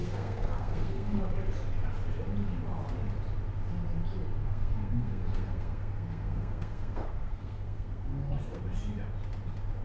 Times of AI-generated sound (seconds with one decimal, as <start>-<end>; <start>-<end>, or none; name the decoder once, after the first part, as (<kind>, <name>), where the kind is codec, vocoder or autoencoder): 0.0-1.2 (codec, SNAC); 4.4-8.6